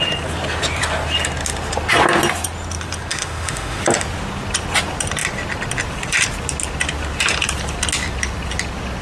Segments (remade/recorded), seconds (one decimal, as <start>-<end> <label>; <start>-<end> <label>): 0.0-3.1 recorded; 3.1-3.8 remade; 3.8-9.0 recorded